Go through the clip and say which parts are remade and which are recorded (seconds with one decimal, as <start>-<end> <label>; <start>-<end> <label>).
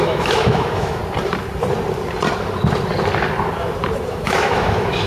0.0-1.0 remade; 1.0-4.1 recorded; 4.1-5.1 remade